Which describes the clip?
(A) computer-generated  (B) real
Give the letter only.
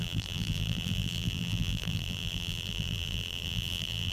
A